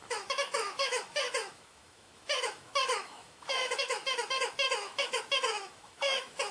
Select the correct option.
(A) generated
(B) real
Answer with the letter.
A